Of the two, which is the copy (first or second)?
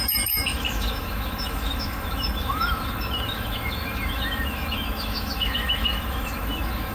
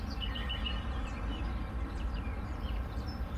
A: first